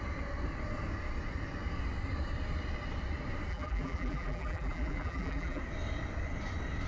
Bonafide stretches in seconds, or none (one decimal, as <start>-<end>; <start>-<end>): 0.0-3.5; 5.6-6.9